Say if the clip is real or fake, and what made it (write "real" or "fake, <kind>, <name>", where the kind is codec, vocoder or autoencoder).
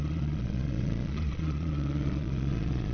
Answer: fake, vocoder, Vocos